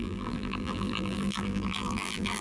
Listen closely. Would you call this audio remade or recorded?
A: remade